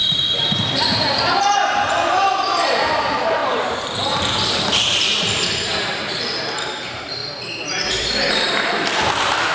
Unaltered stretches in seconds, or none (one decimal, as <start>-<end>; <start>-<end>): 7.2-7.9